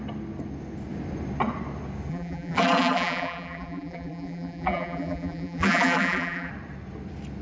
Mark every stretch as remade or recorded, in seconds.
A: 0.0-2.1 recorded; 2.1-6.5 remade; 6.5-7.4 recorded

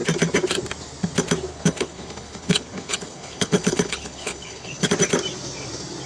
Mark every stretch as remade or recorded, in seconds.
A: 0.0-1.5 recorded; 1.5-4.9 remade; 4.9-6.1 recorded

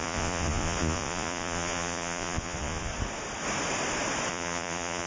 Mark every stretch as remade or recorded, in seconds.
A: 0.0-2.9 remade; 2.9-4.3 recorded; 4.3-5.1 remade

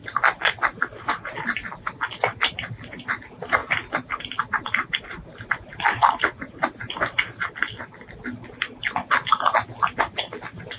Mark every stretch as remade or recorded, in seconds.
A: 0.0-10.8 recorded

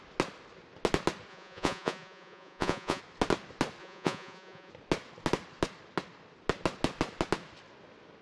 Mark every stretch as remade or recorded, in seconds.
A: 0.0-1.3 recorded; 1.3-3.0 remade; 3.0-3.8 recorded; 3.8-4.7 remade; 4.7-8.2 recorded

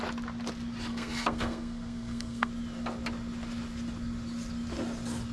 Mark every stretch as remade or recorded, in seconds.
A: 0.0-0.9 recorded; 0.9-2.5 remade; 2.5-5.3 recorded

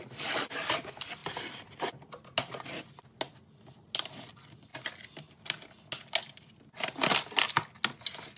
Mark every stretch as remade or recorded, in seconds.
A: 0.0-8.4 recorded